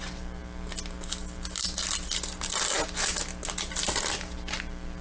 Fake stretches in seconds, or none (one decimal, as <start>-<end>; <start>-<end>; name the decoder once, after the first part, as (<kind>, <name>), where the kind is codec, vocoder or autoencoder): none